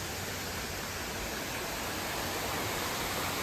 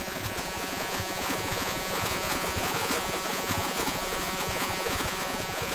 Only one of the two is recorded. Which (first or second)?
first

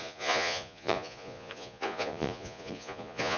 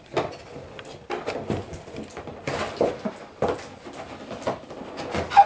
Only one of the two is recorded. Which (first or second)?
second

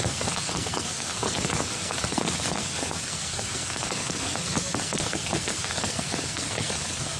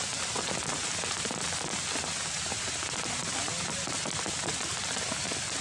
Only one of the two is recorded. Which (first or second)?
second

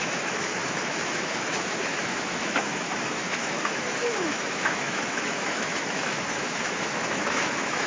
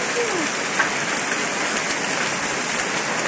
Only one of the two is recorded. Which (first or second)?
second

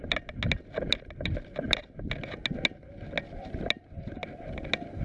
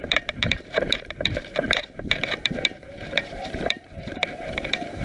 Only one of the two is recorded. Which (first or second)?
first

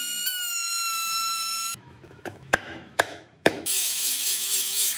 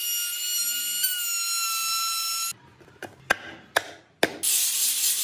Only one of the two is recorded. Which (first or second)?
second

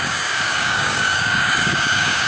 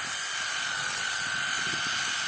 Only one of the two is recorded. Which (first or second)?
second